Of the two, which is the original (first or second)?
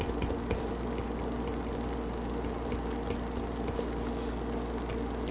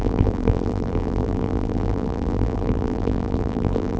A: first